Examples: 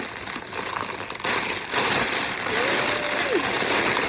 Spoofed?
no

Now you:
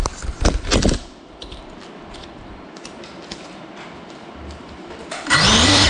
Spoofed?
yes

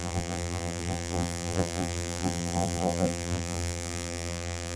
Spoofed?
yes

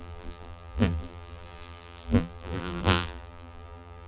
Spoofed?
yes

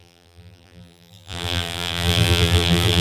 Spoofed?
yes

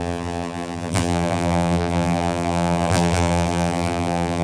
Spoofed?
yes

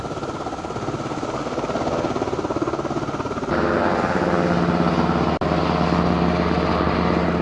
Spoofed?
no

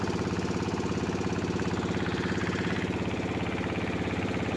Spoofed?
no